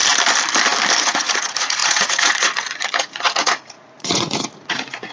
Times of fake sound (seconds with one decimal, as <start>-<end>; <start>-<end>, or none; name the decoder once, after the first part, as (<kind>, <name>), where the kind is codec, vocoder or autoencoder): 1.0-5.1 (vocoder, Vocos)